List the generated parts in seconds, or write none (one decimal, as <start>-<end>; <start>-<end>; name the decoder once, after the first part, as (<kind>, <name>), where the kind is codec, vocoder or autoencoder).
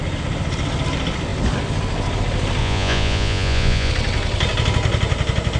2.6-3.9 (vocoder, Vocos)